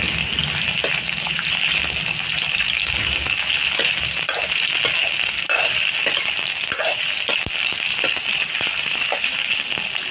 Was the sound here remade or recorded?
recorded